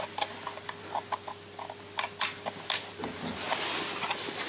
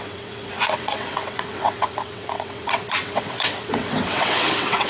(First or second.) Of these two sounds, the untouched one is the first